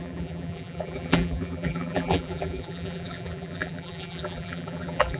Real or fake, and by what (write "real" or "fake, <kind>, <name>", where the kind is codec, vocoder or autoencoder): fake, vocoder, BigVGAN v2